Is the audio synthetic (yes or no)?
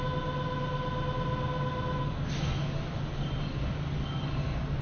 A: no